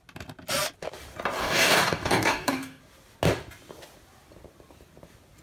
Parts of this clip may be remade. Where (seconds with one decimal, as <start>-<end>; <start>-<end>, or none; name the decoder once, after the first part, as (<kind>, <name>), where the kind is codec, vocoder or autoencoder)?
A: 1.4-2.8 (codec, DAC)